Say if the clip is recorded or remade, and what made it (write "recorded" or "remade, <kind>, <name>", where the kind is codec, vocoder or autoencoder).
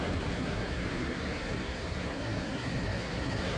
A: remade, codec, SNAC